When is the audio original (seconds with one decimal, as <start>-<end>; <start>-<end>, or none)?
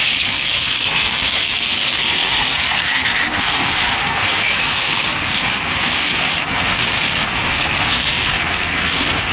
none